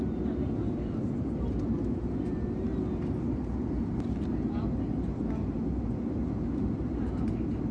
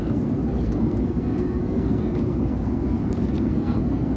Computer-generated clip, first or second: second